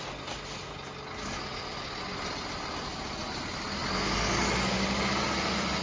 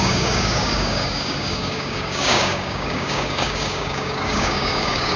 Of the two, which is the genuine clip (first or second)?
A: first